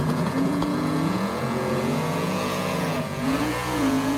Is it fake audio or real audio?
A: fake